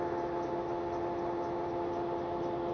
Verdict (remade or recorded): recorded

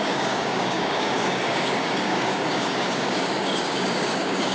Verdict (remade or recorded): remade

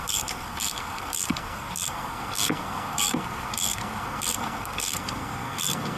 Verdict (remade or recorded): remade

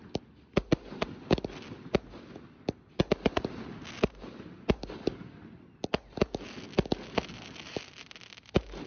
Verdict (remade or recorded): recorded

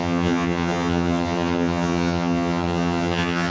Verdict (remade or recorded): remade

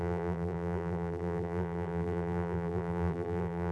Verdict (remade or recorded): remade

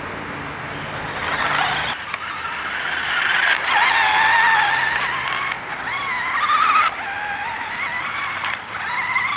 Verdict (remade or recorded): recorded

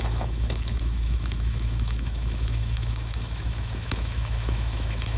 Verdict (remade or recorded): remade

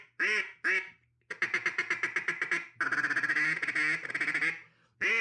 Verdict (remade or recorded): recorded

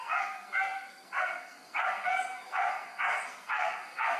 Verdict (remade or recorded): remade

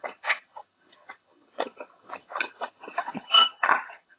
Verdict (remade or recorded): remade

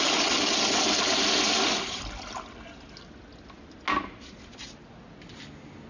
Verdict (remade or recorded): recorded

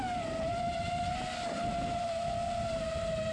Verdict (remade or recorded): recorded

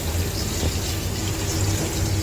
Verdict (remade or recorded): recorded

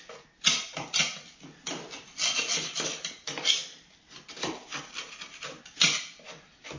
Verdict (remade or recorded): recorded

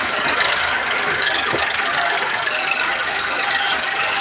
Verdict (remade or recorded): remade